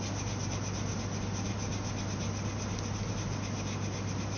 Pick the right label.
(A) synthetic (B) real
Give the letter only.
B